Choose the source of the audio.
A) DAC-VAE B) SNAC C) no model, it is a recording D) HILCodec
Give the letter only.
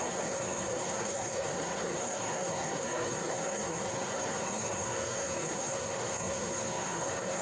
B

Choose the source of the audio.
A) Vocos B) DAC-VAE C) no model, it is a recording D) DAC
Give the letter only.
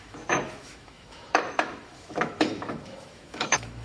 B